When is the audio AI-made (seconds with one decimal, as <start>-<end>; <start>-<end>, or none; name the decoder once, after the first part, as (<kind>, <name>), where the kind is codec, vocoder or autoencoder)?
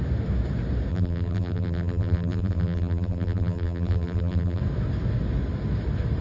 0.9-4.6 (vocoder, BigVGAN v2)